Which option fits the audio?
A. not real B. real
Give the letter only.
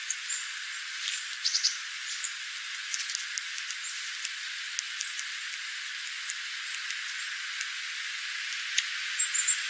B